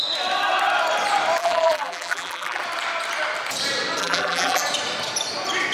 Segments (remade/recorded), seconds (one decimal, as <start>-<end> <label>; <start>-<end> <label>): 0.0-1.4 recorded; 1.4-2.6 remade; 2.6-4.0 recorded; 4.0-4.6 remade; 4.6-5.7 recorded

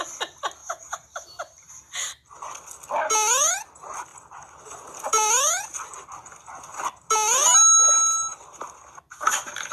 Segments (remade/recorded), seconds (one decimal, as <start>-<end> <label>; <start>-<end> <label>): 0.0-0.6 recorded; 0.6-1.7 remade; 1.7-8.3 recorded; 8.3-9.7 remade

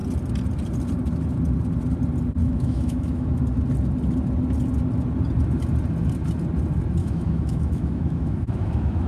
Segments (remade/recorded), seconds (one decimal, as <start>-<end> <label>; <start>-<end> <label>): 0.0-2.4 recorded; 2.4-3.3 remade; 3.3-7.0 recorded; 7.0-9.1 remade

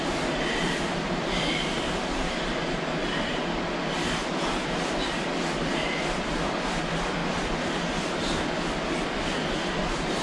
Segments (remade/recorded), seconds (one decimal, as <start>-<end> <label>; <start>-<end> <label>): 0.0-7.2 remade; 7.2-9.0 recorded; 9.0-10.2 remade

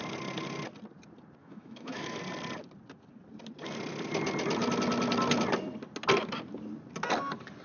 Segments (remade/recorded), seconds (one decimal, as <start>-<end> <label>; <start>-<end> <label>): 0.0-1.4 recorded; 1.4-2.2 remade; 2.2-7.6 recorded